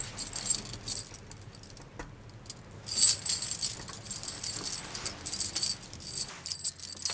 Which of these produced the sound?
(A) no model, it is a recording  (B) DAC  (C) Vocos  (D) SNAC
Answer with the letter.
A